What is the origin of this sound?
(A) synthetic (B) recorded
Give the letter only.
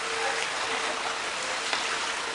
B